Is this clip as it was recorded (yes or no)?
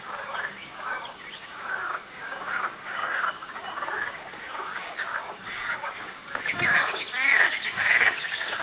no